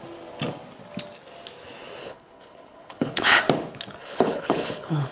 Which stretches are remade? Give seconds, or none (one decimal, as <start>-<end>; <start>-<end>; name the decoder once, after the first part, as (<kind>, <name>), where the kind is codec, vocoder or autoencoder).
2.0-3.4 (codec, HILCodec); 4.0-5.1